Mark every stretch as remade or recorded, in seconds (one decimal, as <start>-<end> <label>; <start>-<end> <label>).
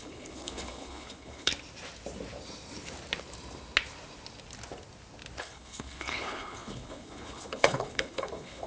0.0-1.5 remade; 1.5-5.4 recorded; 5.4-8.7 remade